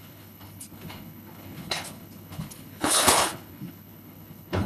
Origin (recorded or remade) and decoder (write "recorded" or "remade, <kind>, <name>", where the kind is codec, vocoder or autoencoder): remade, codec, HILCodec